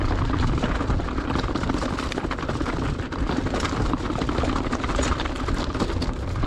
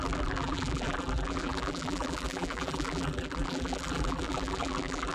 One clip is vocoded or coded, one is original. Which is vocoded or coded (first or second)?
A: second